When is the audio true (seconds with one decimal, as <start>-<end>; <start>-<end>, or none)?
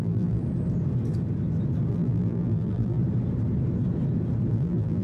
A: 0.4-1.9; 3.0-4.5